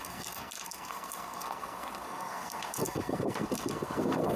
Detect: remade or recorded remade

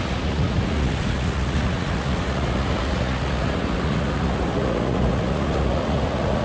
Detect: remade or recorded remade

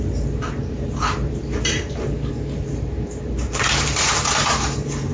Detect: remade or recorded remade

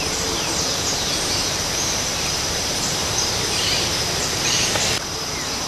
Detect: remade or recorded remade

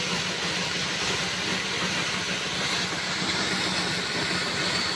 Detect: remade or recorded recorded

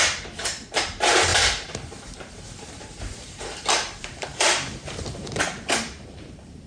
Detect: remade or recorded remade